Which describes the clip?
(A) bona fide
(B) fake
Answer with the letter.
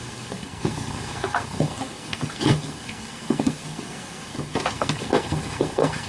B